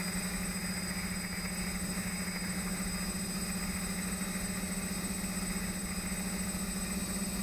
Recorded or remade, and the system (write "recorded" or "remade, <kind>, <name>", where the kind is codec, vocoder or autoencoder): recorded